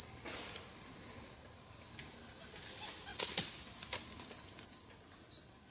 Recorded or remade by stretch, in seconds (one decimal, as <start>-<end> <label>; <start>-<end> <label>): 0.0-5.7 recorded